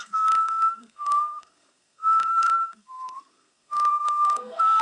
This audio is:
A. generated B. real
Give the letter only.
A